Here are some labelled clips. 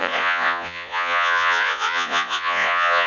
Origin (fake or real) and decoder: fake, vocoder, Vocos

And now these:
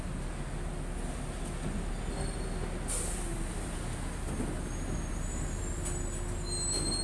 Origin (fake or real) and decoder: real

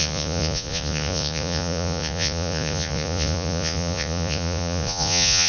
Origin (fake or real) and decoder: fake, vocoder, Vocos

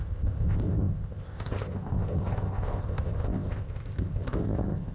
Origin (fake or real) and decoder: fake, codec, ZipCodec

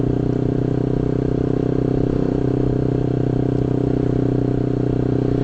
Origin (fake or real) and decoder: real